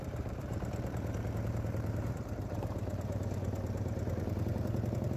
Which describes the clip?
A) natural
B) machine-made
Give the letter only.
B